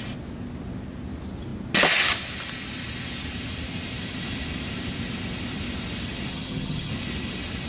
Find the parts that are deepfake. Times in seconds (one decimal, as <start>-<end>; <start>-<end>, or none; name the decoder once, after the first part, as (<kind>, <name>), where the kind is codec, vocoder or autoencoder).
6.3-6.9 (vocoder, HiFi-GAN)